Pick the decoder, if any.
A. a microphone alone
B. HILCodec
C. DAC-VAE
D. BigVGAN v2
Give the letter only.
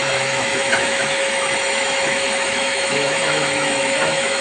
C